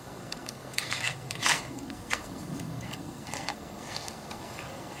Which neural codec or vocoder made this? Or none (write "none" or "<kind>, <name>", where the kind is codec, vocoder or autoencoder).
codec, SNAC